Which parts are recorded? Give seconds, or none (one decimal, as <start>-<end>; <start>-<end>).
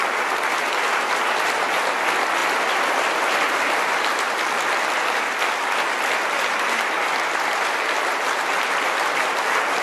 0.0-9.8